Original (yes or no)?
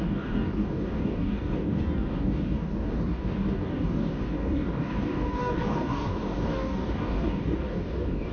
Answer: no